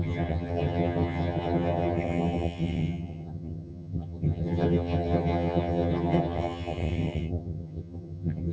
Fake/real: fake